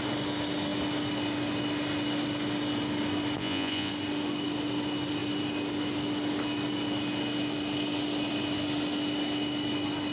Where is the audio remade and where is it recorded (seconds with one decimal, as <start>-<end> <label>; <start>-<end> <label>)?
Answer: 0.0-3.4 recorded; 3.4-3.9 remade; 3.9-10.1 recorded